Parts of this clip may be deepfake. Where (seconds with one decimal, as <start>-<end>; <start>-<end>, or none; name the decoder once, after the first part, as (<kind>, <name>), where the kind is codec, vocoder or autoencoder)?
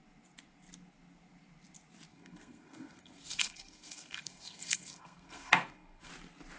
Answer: 2.1-6.1 (codec, SNAC)